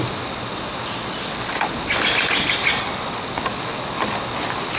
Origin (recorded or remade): recorded